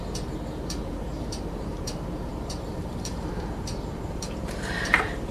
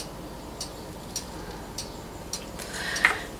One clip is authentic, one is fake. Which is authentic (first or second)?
second